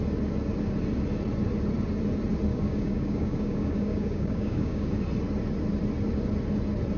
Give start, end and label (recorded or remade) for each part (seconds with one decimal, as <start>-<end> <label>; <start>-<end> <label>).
0.0-2.5 recorded; 2.5-4.9 remade; 4.9-7.0 recorded